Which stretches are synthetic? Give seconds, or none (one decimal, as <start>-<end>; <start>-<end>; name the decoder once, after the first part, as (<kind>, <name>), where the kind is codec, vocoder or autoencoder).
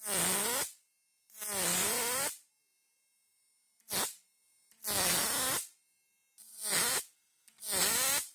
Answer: 1.7-2.5 (vocoder, BigVGAN v2); 6.5-7.0